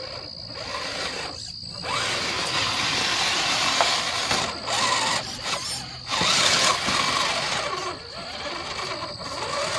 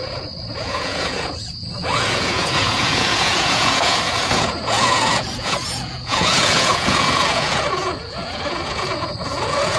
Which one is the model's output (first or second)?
second